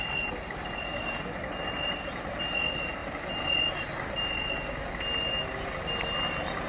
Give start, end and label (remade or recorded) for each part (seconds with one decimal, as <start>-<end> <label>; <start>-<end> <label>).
0.0-6.7 recorded